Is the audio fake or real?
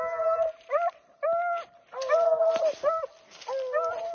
real